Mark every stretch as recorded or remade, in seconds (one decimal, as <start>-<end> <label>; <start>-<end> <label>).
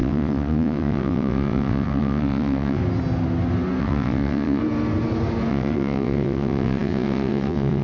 0.0-2.8 remade; 2.8-3.8 recorded; 3.8-4.6 remade; 4.6-5.5 recorded; 5.5-7.8 remade